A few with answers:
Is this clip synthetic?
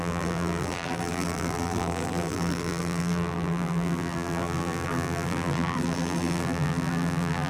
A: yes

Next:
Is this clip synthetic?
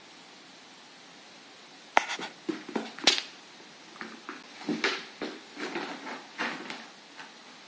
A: no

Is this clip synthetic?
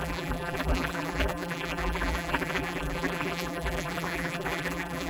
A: yes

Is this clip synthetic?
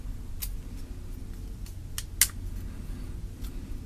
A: no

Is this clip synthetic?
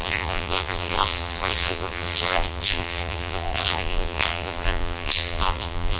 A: yes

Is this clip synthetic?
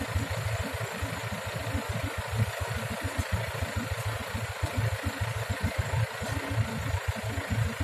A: no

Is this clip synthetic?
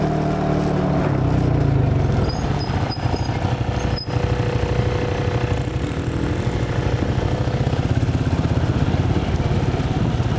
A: no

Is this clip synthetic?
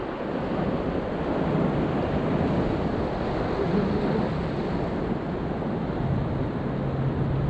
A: no